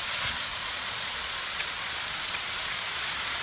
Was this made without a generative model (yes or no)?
no